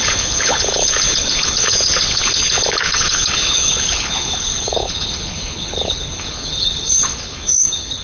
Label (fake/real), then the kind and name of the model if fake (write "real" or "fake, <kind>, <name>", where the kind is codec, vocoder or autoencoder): fake, codec, HILCodec